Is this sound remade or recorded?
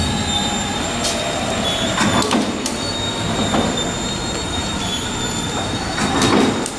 recorded